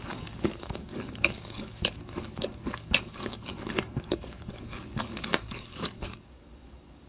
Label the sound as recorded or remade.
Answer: remade